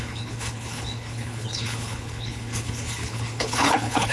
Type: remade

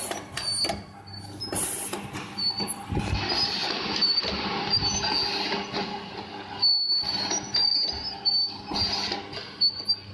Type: recorded